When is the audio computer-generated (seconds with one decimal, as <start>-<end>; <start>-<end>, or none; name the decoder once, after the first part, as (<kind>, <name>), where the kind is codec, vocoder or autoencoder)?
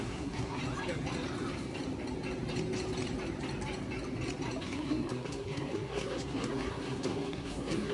0.0-0.6 (codec, SNAC); 4.6-7.9